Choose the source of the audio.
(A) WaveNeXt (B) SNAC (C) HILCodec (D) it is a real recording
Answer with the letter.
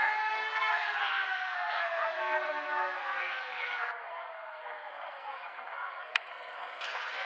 B